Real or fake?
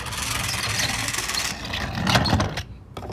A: real